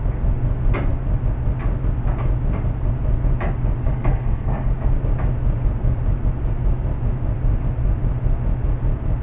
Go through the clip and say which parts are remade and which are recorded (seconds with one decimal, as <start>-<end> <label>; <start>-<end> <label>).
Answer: 0.0-3.8 recorded; 3.8-4.7 remade; 4.7-9.2 recorded